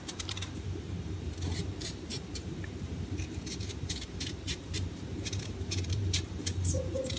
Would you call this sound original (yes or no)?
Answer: no